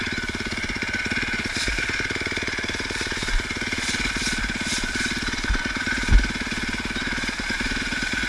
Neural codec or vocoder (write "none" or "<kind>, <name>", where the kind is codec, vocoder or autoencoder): vocoder, Vocos